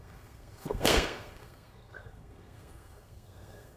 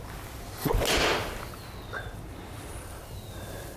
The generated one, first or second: first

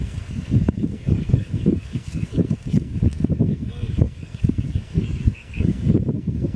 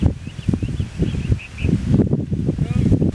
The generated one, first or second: first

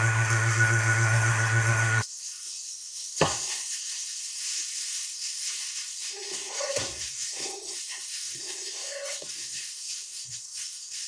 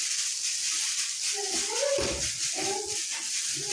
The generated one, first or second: first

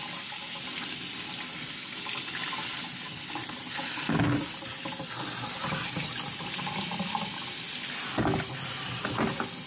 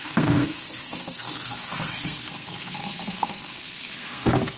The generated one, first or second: second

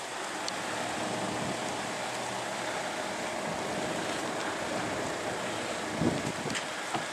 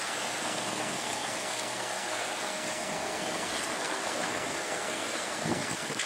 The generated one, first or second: second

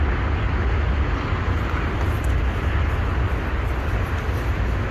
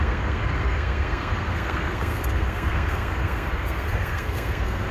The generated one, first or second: second